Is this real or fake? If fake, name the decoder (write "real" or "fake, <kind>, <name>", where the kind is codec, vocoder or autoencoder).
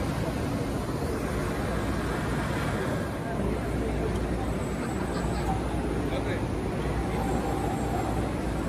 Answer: real